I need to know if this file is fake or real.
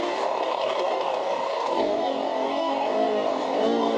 fake